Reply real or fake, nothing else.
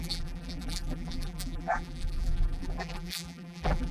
fake